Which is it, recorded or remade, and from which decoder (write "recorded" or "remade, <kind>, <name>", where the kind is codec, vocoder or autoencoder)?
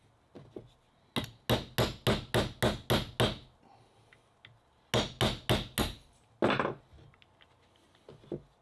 recorded